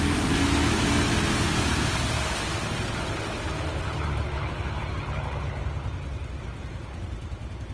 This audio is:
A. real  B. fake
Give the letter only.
A